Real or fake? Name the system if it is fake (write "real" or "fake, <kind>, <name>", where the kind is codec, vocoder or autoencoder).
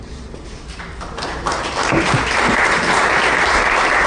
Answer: real